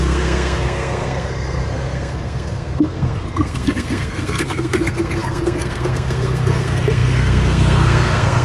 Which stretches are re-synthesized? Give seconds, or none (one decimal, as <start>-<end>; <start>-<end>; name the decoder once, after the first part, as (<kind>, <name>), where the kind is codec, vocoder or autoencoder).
0.0-8.4 (codec, SNAC)